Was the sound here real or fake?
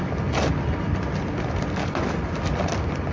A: real